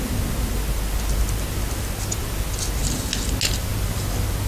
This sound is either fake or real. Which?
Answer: real